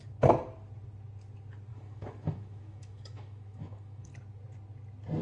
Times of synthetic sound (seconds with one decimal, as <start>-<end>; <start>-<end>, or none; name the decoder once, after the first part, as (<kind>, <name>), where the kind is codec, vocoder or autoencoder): 1.7-4.1 (autoencoder, DAC-VAE)